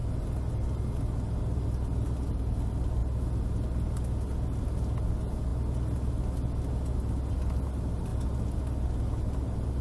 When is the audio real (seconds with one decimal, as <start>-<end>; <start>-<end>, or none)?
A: 0.0-9.8